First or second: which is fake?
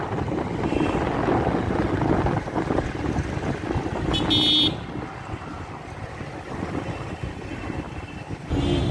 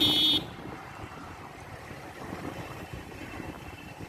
second